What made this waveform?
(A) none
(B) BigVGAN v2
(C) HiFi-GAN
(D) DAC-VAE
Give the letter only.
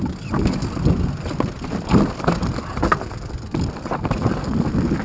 A